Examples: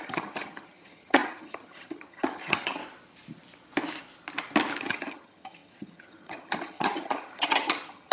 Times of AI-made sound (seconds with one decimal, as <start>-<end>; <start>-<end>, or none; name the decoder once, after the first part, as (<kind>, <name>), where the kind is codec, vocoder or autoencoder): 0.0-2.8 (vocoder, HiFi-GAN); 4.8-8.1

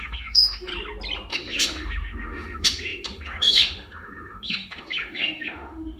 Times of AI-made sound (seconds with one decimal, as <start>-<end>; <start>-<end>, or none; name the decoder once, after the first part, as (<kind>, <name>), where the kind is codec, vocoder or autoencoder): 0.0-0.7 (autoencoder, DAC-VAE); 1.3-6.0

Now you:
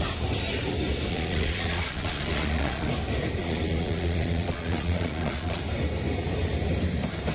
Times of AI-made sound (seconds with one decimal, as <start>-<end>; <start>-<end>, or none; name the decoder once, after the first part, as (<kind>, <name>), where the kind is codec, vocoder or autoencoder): 1.1-2.9 (vocoder, Vocos); 3.4-5.6

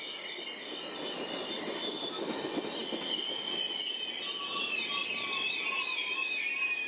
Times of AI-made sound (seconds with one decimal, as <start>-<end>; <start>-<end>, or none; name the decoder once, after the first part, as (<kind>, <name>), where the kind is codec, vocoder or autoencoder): none